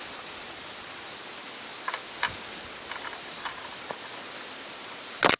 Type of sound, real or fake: real